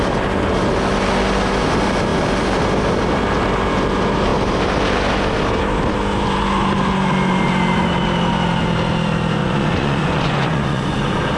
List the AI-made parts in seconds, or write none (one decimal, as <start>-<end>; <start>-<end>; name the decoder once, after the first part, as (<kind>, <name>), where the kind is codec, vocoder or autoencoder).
9.4-11.4 (vocoder, Vocos)